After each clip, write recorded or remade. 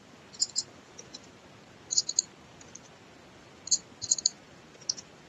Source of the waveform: remade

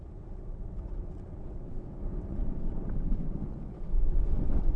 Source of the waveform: remade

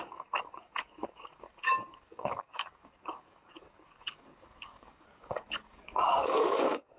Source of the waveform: remade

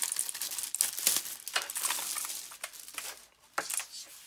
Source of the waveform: recorded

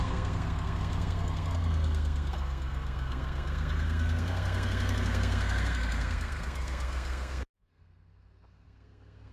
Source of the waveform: remade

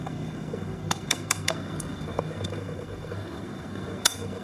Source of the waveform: remade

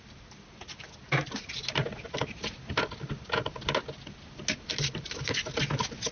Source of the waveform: recorded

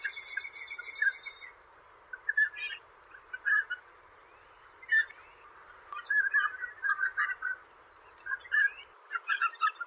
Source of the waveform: recorded